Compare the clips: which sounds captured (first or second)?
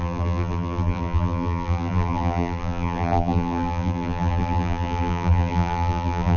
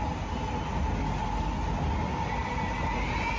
second